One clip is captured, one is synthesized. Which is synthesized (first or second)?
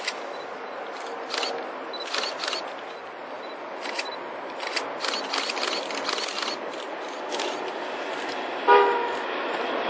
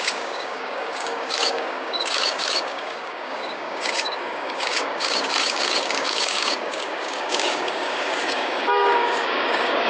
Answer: second